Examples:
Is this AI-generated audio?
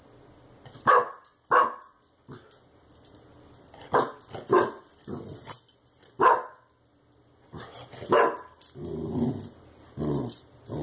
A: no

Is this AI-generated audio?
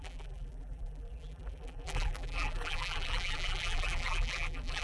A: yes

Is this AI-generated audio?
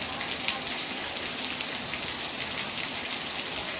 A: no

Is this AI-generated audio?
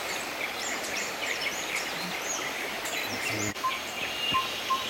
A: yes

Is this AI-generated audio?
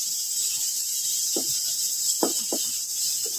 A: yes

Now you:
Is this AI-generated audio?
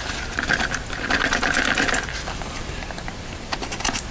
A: no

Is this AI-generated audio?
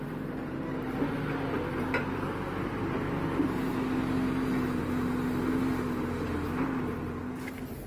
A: no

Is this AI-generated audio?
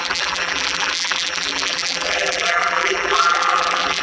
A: yes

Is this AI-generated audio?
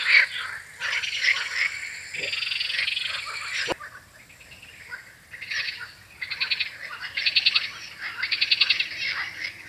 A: no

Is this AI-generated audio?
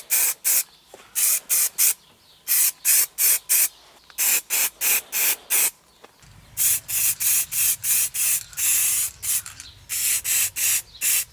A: no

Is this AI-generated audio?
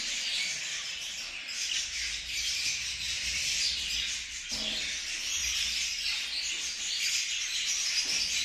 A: no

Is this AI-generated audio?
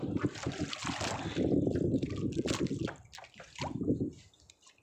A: no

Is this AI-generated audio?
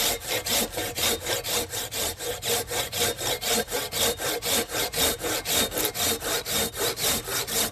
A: yes